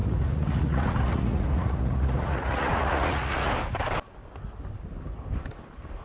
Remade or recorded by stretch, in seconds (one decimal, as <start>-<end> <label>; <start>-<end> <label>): 0.0-3.5 remade; 3.5-6.0 recorded